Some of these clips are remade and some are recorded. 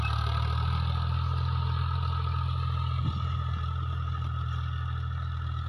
recorded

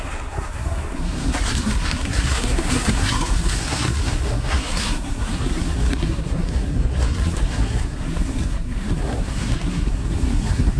remade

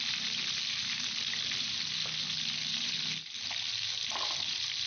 recorded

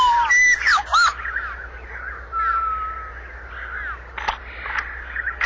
recorded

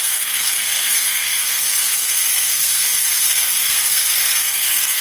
remade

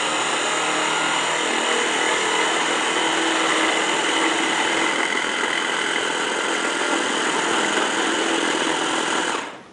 recorded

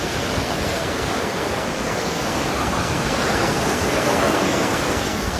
remade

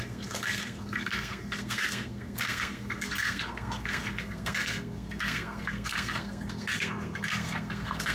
remade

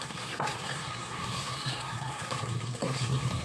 remade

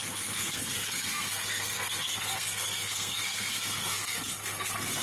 remade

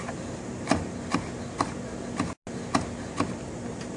recorded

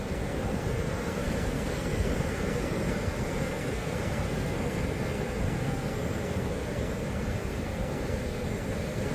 remade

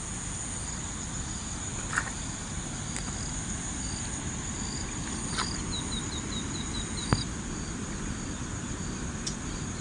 recorded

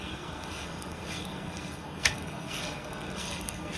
remade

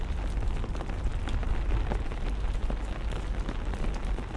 recorded